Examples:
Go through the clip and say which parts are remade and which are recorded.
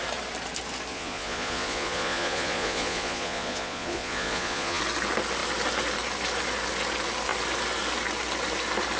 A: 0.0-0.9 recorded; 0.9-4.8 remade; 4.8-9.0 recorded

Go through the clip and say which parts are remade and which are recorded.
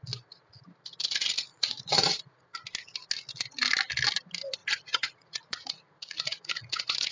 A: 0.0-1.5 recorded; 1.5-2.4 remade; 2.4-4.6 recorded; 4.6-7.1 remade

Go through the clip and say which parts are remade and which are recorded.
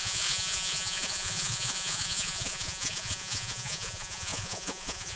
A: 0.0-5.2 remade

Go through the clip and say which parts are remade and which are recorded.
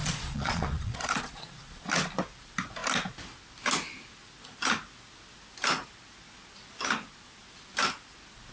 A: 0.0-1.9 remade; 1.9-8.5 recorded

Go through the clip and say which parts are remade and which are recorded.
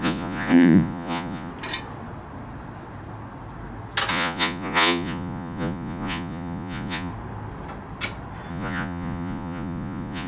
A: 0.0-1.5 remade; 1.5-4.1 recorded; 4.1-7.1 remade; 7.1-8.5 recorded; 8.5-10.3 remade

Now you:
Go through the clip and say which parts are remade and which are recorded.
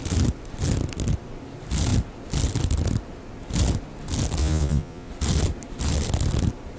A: 0.0-4.4 recorded; 4.4-5.1 remade; 5.1-6.8 recorded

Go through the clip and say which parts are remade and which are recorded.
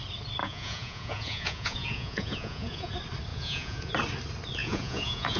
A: 0.0-0.4 recorded; 0.4-2.9 remade; 2.9-3.3 recorded; 3.3-3.9 remade; 3.9-4.6 recorded; 4.6-5.4 remade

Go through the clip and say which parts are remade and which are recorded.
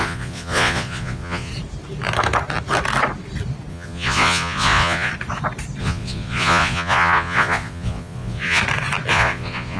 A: 0.0-1.5 remade; 1.5-3.7 recorded; 3.7-5.1 remade; 5.1-5.8 recorded; 5.8-8.6 remade; 8.6-9.1 recorded; 9.1-9.8 remade